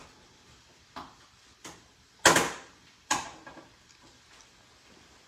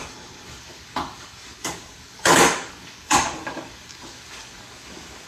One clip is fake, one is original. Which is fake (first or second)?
second